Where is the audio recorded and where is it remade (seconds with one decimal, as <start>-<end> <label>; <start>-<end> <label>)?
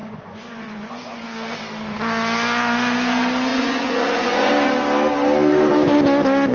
0.0-1.2 remade; 1.2-3.5 recorded; 3.5-4.5 remade; 4.5-6.5 recorded